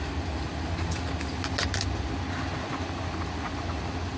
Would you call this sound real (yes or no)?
yes